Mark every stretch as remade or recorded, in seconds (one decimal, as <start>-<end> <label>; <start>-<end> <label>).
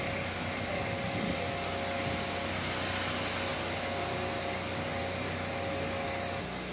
0.0-6.7 recorded